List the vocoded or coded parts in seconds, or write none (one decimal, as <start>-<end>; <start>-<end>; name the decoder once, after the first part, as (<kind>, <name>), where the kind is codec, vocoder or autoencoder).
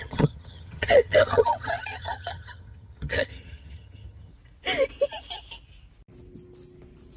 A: 0.0-4.3 (vocoder, HiFi-GAN)